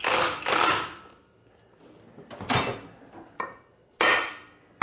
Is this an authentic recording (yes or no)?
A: yes